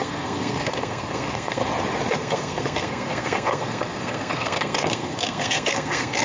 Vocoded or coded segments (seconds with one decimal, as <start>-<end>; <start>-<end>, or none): 0.0-1.6; 2.1-6.2